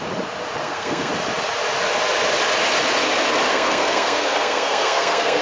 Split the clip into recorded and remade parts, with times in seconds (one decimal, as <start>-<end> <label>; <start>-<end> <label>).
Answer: 0.0-0.6 recorded; 0.6-1.1 remade; 1.1-3.5 recorded; 3.5-5.4 remade